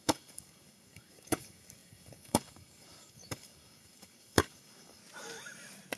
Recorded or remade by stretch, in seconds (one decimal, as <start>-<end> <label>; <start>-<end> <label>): 0.0-5.0 remade; 5.0-6.0 recorded